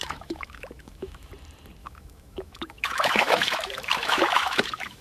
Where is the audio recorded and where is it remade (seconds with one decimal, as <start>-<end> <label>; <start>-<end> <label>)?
0.0-1.3 remade; 1.3-1.8 recorded; 1.8-5.0 remade